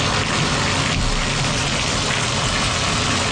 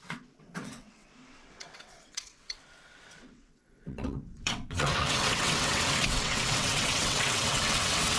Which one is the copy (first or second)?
second